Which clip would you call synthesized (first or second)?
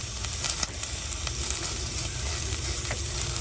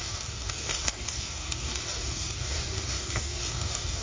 second